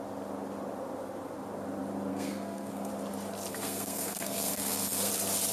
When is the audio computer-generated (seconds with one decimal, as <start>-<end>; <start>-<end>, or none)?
2.1-2.9; 3.5-5.1